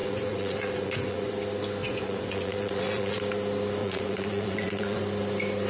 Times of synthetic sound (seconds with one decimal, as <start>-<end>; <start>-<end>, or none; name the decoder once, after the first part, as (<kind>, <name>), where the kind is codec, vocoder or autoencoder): 0.0-1.3 (vocoder, Vocos); 1.8-3.2; 3.8-5.0

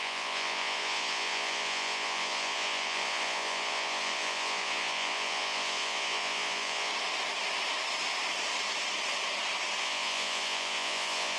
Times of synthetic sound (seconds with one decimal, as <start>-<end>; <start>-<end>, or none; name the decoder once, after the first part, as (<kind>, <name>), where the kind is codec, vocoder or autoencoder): 0.0-6.9 (vocoder, Vocos); 9.8-11.4